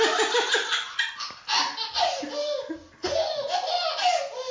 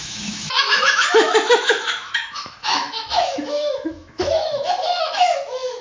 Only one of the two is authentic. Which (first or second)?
first